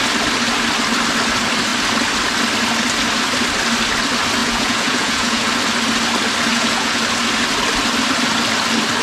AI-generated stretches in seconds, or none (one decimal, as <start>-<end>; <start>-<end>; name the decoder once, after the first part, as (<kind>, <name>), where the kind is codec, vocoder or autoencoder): 4.4-5.5 (vocoder, Vocos); 6.5-7.0